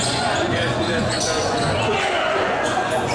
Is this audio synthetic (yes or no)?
yes